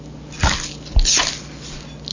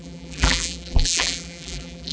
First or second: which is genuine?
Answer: first